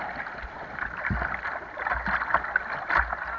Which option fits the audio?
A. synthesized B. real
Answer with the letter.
B